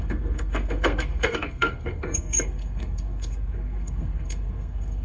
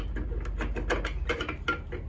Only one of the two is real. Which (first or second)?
second